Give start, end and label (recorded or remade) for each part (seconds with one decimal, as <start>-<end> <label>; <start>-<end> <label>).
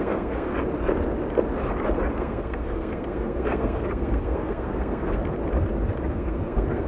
0.0-0.5 remade; 0.5-2.1 recorded; 2.1-5.2 remade; 5.2-6.1 recorded; 6.1-6.9 remade